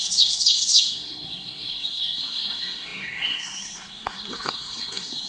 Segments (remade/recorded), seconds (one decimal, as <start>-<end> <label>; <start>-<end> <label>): 0.0-5.3 remade